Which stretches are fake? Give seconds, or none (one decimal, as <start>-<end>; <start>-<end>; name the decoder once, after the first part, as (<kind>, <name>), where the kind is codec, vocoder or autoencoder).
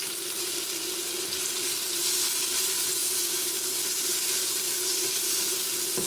none